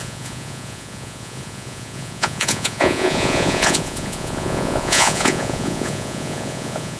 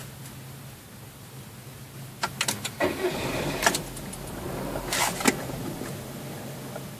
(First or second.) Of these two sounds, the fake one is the first